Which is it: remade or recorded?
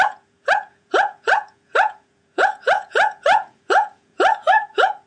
remade